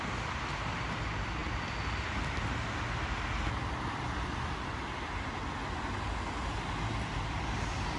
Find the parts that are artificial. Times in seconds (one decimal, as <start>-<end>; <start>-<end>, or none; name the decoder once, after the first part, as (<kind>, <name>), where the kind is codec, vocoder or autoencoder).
none